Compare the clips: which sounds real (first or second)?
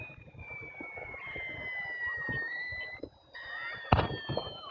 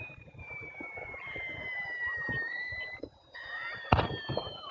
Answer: first